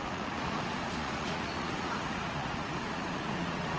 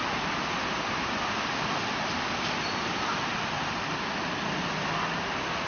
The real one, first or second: second